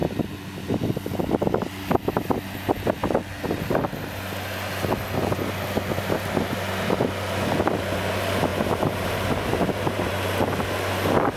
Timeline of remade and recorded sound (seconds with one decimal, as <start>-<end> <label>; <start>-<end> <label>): 0.0-8.5 recorded; 8.5-10.1 remade; 10.1-11.4 recorded